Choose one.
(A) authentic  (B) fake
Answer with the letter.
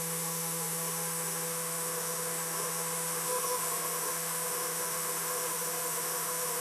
B